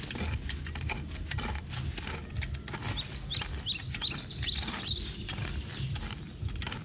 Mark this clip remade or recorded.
recorded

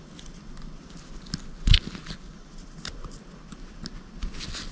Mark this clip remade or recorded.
recorded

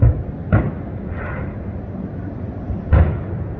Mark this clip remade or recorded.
recorded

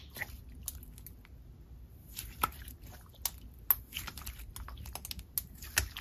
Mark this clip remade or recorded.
recorded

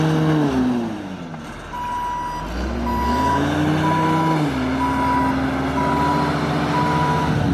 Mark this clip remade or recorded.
recorded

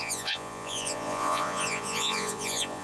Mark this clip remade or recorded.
remade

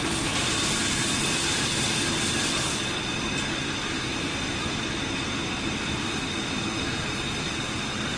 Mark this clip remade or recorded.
recorded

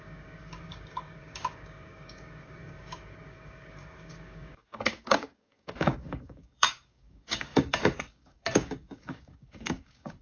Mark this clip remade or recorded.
remade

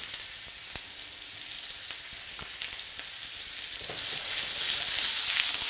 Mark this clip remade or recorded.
recorded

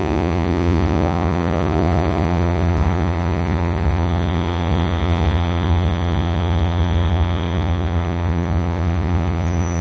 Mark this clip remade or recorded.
remade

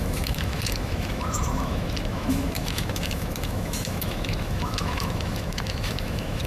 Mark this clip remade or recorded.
remade